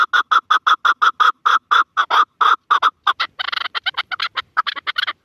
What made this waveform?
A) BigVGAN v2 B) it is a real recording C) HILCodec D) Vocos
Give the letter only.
B